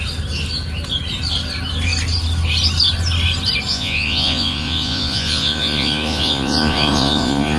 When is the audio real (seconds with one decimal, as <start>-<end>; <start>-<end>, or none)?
0.0-3.7